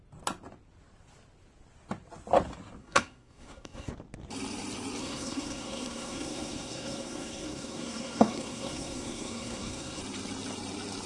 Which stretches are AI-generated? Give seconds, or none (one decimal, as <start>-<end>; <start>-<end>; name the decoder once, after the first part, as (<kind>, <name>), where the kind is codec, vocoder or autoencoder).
2.8-3.9 (codec, SNAC); 5.0-10.0